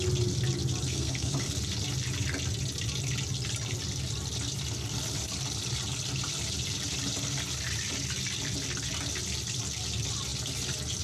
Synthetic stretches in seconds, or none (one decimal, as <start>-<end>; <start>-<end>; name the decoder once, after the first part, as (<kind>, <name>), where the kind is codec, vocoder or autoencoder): 0.9-1.5 (codec, SNAC)